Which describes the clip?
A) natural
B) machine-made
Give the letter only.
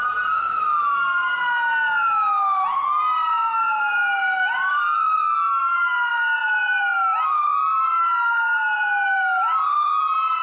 A